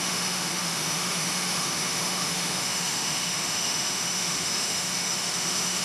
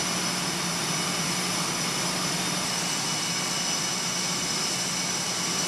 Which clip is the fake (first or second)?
first